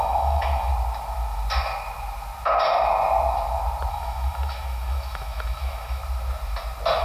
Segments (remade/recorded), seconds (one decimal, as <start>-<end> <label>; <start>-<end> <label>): 0.0-0.7 remade; 0.7-3.9 recorded; 3.9-6.0 remade; 6.0-7.0 recorded